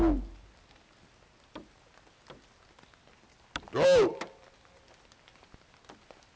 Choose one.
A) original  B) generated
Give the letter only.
A